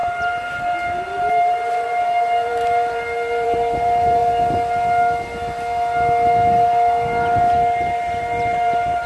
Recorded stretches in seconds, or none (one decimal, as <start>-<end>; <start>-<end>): 4.2-8.0